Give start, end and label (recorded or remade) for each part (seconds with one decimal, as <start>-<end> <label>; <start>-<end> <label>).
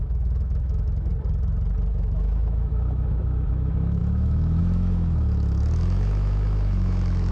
0.0-1.1 remade; 1.1-1.9 recorded; 1.9-7.3 remade